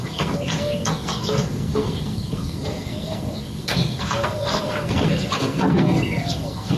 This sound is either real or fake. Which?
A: fake